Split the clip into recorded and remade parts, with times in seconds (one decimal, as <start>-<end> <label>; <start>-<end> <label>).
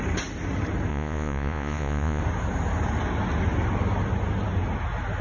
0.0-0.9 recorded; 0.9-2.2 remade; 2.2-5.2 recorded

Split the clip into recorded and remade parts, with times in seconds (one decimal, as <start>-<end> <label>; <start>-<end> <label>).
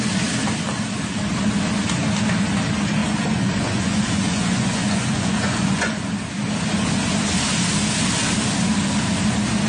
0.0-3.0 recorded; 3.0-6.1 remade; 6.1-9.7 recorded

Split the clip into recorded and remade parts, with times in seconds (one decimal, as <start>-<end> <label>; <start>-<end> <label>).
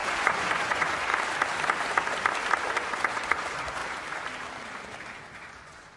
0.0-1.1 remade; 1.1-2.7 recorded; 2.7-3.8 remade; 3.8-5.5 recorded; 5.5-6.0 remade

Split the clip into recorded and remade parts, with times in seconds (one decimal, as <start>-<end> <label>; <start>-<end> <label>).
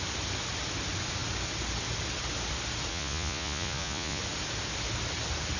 0.0-2.9 recorded; 2.9-4.2 remade; 4.2-5.6 recorded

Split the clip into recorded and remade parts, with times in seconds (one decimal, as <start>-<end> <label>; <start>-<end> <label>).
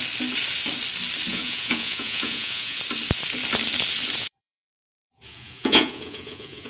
0.0-1.3 recorded; 1.3-2.8 remade; 2.8-4.2 recorded; 4.2-6.7 remade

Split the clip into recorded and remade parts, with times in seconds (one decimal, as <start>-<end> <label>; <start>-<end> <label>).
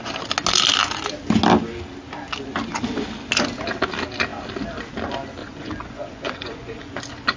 0.0-5.4 recorded; 5.4-7.0 remade; 7.0-7.4 recorded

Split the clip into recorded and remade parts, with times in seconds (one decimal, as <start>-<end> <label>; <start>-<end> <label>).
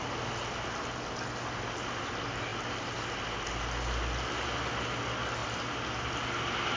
0.0-6.8 recorded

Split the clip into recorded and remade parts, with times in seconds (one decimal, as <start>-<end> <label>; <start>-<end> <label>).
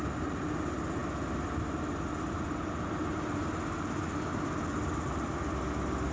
0.0-6.1 recorded